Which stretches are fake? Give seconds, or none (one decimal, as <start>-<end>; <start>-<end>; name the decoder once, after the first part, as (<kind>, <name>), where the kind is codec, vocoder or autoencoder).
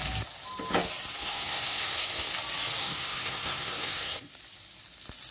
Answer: 1.1-2.3 (codec, SNAC); 2.8-4.3